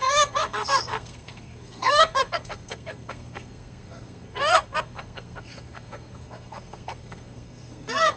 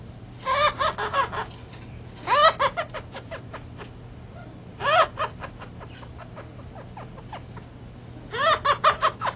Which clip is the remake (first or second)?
first